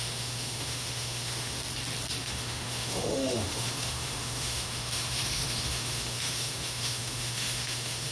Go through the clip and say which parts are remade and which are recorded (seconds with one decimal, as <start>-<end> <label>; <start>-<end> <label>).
0.0-1.6 remade; 1.6-2.2 recorded; 2.2-8.1 remade